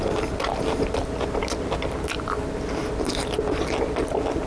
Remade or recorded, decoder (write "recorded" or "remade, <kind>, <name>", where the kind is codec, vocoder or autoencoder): recorded